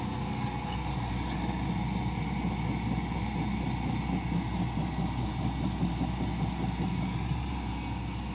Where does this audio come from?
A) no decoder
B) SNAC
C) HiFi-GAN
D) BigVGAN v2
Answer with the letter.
A